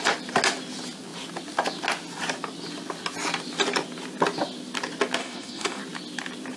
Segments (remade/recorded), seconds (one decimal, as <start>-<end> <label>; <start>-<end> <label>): 0.0-5.2 recorded; 5.2-5.8 remade; 5.8-6.6 recorded